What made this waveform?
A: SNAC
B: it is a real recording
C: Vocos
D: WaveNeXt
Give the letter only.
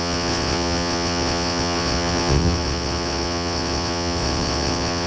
D